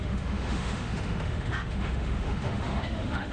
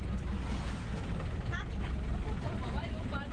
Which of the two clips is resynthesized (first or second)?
first